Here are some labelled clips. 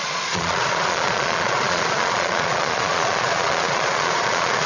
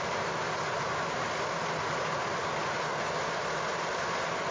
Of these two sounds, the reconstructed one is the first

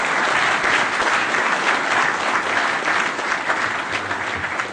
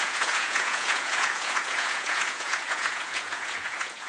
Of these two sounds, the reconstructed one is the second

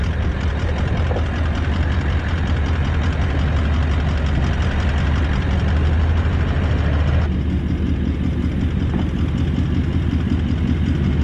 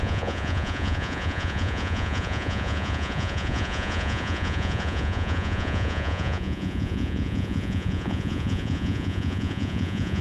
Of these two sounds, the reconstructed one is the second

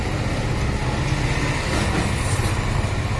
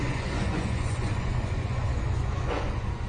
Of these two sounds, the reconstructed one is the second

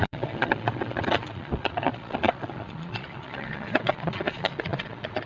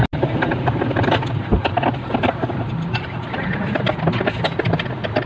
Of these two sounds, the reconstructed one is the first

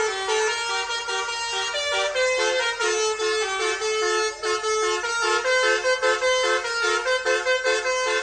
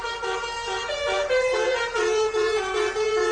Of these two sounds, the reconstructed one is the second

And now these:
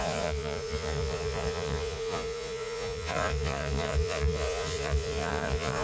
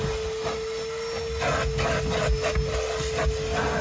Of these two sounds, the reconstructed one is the first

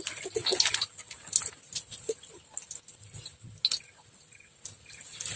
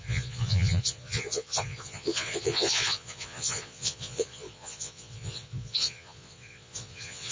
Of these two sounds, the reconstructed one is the second